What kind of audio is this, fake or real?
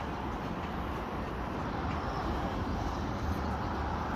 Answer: real